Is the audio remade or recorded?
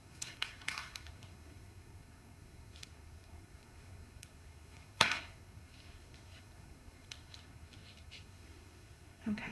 remade